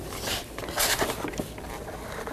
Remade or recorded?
recorded